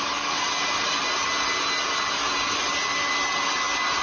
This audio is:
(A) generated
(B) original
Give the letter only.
B